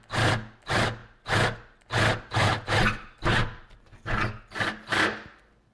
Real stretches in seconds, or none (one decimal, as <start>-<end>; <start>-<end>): 0.0-5.7